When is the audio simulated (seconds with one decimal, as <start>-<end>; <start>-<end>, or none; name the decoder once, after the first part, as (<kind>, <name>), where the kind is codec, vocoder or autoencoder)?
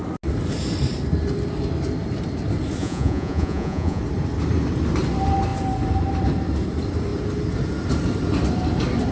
2.8-4.0 (vocoder, Vocos)